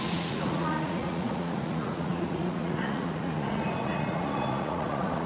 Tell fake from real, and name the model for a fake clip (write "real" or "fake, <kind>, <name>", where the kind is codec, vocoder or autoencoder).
fake, vocoder, Vocos